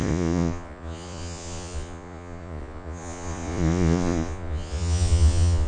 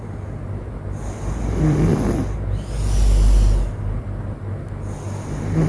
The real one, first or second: second